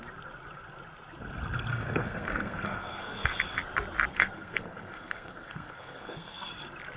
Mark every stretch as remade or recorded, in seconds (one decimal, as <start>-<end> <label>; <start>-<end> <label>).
0.0-1.7 recorded; 1.7-3.4 remade; 3.4-4.1 recorded; 4.1-6.5 remade; 6.5-7.0 recorded